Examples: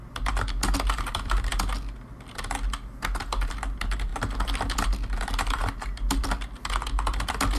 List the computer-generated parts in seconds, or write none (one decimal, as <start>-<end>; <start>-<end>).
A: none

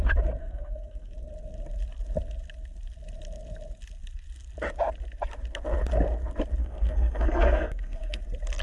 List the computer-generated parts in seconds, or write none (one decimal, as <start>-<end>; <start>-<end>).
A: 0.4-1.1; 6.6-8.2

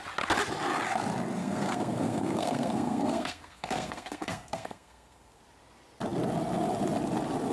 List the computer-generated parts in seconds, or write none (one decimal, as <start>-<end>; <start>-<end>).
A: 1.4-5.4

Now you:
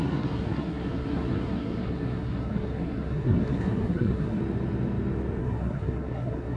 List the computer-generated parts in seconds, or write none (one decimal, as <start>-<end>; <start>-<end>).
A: 0.0-4.4; 5.4-6.6

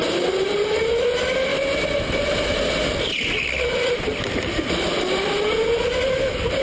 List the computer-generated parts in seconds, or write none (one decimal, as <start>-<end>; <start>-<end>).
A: none

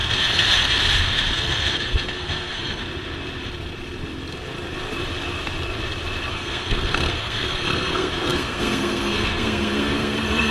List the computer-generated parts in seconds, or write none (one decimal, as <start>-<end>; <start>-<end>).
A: 0.0-2.8; 6.3-10.5

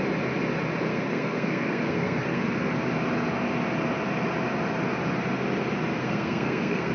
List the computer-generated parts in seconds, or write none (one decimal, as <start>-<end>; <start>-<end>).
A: 0.9-2.4; 6.0-6.9